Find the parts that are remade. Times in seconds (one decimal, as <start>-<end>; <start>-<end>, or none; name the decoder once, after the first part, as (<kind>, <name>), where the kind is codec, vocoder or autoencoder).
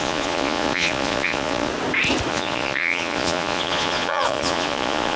0.0-1.7 (vocoder, Vocos); 2.3-5.2